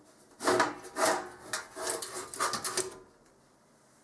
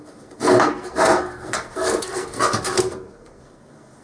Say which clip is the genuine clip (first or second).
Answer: first